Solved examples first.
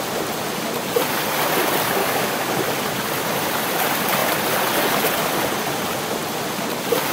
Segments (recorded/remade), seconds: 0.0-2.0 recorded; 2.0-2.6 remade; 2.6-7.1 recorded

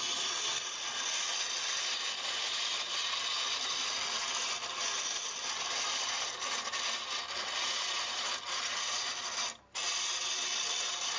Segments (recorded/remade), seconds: 0.0-11.2 recorded

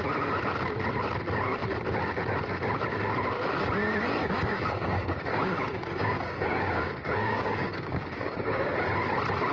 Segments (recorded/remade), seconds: 0.0-4.2 recorded; 4.2-8.8 remade; 8.8-9.5 recorded

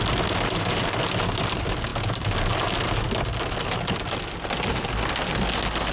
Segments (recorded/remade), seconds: 0.0-5.9 recorded

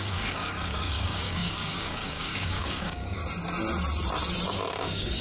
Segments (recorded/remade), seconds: 0.0-3.2 remade; 3.2-4.7 recorded; 4.7-5.2 remade

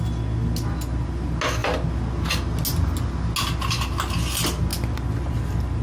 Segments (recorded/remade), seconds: 0.0-5.8 recorded

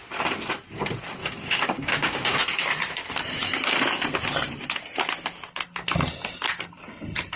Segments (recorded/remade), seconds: 0.0-1.2 recorded; 1.2-2.4 remade; 2.4-7.4 recorded

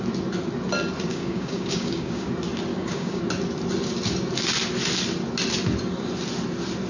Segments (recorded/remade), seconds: 0.0-1.1 recorded; 1.1-2.3 remade; 2.3-2.7 recorded; 2.7-3.2 remade; 3.2-6.9 recorded